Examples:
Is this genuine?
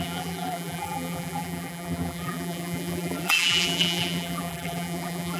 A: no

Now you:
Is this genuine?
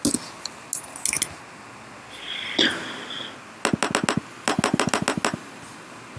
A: yes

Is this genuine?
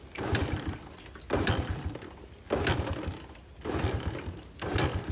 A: yes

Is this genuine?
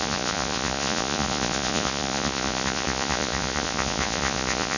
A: no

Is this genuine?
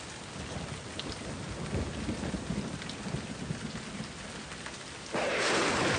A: yes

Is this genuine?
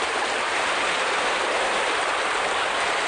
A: no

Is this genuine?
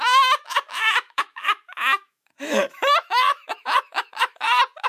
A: no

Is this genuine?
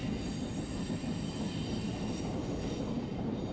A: yes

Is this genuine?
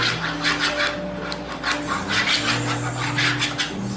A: yes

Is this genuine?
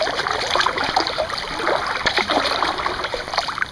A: yes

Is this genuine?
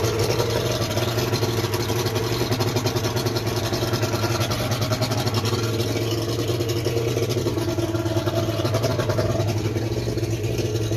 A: yes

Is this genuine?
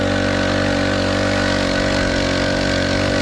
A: yes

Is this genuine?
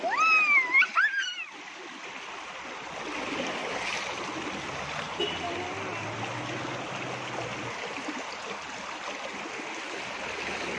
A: yes